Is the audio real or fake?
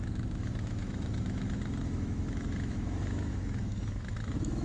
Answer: fake